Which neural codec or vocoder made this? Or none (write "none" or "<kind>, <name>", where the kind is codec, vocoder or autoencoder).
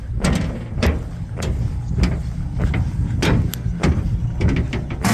none